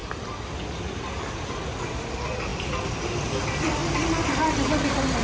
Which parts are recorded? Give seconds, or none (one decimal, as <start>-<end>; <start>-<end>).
0.0-5.2